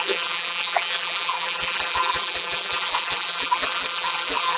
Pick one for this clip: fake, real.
fake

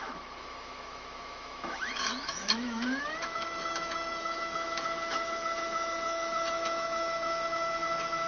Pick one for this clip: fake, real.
fake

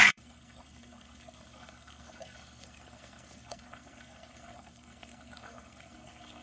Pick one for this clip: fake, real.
fake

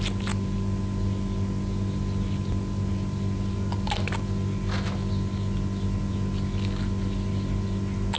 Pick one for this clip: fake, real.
real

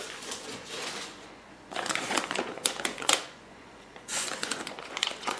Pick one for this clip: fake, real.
fake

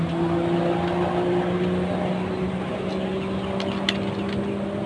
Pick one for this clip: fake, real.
real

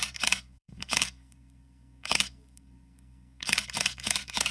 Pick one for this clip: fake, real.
fake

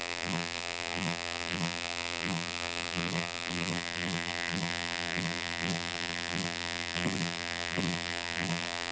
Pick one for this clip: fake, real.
fake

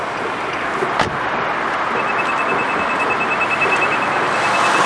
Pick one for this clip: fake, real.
real